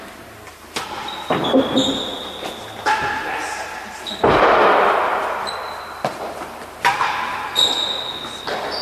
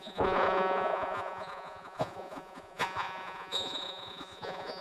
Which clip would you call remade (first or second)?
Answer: second